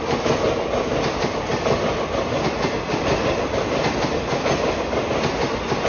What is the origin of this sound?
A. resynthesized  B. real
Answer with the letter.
B